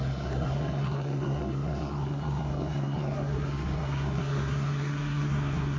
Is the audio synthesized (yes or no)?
yes